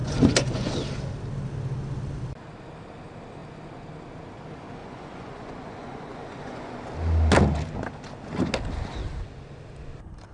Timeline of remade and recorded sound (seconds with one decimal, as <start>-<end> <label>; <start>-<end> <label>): 0.0-0.7 remade; 0.7-4.8 recorded; 4.8-6.8 remade; 6.8-10.3 recorded